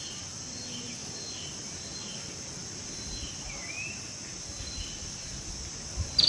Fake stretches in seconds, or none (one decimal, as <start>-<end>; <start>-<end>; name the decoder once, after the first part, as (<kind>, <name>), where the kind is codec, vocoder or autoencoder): none